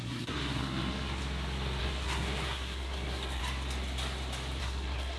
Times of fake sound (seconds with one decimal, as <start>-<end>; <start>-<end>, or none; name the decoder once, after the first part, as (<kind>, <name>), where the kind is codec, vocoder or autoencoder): 0.0-1.2 (codec, SNAC); 1.8-3.4; 4.6-5.2